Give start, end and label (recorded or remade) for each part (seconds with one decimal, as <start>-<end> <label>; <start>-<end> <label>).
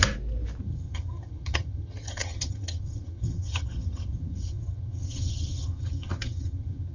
0.0-0.6 recorded; 0.6-6.9 remade